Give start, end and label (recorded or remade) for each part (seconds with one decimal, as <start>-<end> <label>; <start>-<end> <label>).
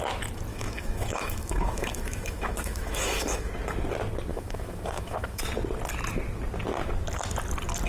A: 0.0-0.5 recorded; 0.5-3.5 remade; 3.5-4.3 recorded; 4.3-5.4 remade; 5.4-7.9 recorded